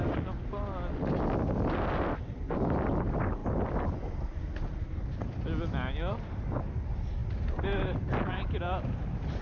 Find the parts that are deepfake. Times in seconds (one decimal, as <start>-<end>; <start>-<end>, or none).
none